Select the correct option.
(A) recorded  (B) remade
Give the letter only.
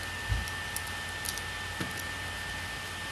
A